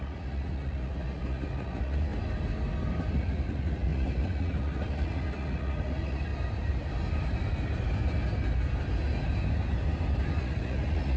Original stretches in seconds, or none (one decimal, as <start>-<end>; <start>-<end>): 2.1-3.1; 6.3-10.4